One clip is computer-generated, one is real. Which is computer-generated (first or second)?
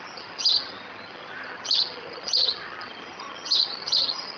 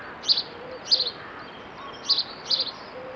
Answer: first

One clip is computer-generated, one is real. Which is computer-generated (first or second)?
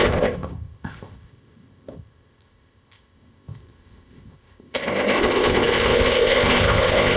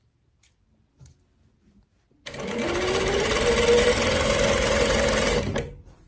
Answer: first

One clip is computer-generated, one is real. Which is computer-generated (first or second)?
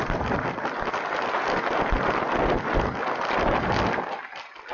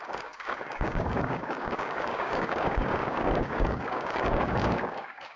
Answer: second